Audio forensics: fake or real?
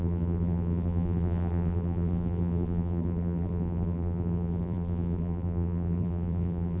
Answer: fake